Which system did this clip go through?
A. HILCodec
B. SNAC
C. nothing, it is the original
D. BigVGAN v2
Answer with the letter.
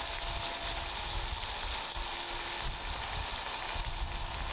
C